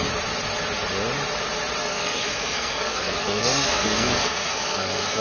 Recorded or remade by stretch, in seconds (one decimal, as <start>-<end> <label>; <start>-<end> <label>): 0.0-1.8 recorded; 1.8-5.2 remade